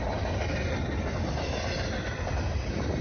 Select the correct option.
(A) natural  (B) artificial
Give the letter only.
A